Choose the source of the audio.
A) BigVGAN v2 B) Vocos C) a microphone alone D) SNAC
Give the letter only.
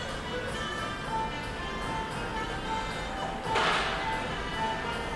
C